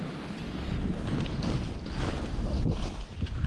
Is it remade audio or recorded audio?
recorded